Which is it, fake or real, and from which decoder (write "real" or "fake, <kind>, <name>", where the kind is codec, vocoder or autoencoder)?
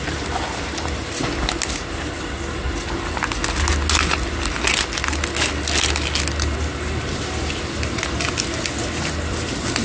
real